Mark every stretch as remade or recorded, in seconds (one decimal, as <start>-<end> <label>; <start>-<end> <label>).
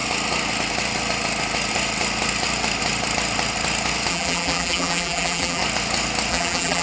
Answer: 0.0-4.1 recorded; 4.1-5.6 remade; 5.6-6.3 recorded; 6.3-6.8 remade